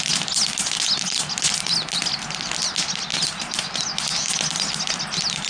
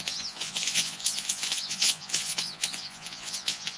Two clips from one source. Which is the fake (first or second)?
second